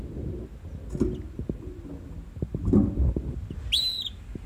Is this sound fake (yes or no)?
no